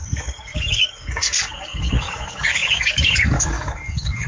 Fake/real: fake